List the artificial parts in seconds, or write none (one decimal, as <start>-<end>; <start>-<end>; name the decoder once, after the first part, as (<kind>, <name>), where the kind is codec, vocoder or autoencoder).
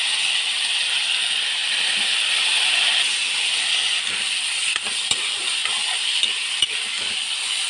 none